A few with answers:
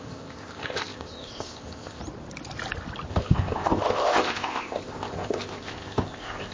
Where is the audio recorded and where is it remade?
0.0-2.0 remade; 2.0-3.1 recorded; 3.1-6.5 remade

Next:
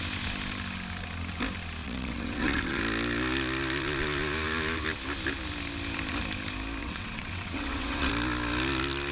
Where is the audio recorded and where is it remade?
0.0-1.8 recorded; 1.8-2.8 remade; 2.8-6.8 recorded; 6.8-8.1 remade; 8.1-9.1 recorded

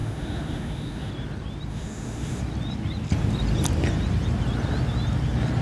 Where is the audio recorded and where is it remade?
0.0-1.1 remade; 1.1-1.7 recorded; 1.7-2.4 remade; 2.4-5.6 recorded

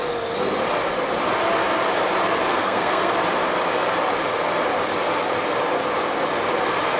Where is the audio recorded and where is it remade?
0.0-2.5 recorded; 2.5-3.1 remade; 3.1-7.0 recorded

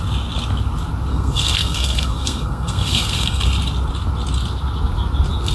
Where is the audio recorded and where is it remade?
0.0-1.1 recorded; 1.1-3.4 remade; 3.4-5.5 recorded

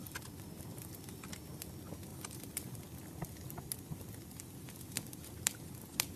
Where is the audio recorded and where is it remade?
0.0-1.7 remade; 1.7-2.1 recorded; 2.1-5.8 remade; 5.8-6.2 recorded

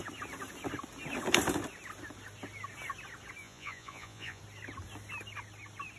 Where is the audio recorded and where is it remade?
0.0-3.4 recorded; 3.4-4.4 remade; 4.4-6.0 recorded

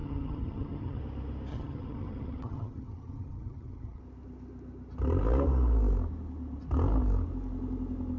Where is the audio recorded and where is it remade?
0.0-1.0 remade; 1.0-1.5 recorded; 1.5-4.0 remade; 4.0-8.2 recorded